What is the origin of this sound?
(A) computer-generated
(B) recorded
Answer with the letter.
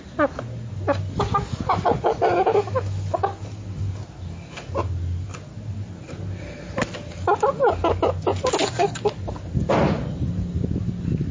B